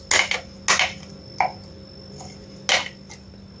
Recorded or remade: recorded